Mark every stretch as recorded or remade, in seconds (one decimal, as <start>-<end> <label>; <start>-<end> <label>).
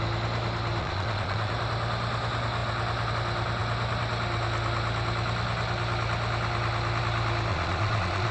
0.0-0.8 recorded; 0.8-1.5 remade; 1.5-7.5 recorded; 7.5-8.3 remade